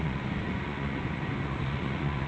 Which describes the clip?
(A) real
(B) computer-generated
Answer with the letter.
B